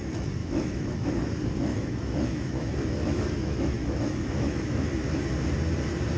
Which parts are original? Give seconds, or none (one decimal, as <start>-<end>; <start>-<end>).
0.0-0.4; 1.1-1.7; 5.2-6.2